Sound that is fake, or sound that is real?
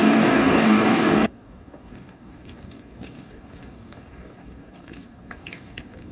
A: fake